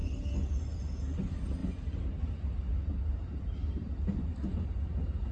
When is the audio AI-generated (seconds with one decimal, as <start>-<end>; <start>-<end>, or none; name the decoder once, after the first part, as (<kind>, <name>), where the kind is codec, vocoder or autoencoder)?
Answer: none